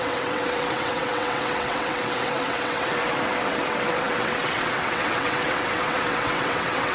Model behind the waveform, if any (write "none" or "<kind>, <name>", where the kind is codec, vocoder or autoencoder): vocoder, WaveNeXt